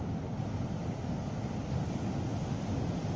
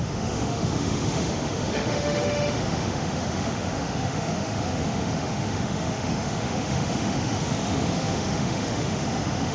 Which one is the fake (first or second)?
second